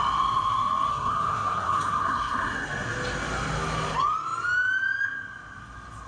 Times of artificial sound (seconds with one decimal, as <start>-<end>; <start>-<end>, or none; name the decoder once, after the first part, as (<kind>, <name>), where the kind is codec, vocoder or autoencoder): 0.9-2.7 (codec, SNAC)